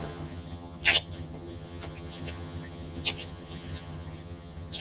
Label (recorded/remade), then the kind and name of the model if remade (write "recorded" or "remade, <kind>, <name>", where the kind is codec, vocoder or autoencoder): remade, vocoder, HiFi-GAN